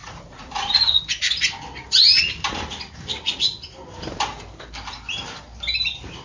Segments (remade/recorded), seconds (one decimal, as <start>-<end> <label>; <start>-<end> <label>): 0.0-1.0 remade; 1.0-6.2 recorded